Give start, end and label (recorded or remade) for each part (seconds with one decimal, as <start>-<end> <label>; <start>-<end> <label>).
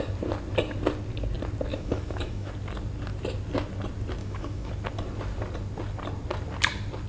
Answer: 0.0-1.7 recorded; 1.7-2.5 remade; 2.5-4.2 recorded; 4.2-4.7 remade; 4.7-7.1 recorded